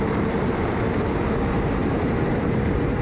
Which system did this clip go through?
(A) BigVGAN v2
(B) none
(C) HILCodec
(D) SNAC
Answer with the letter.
A